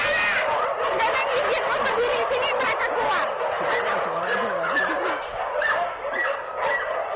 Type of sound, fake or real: real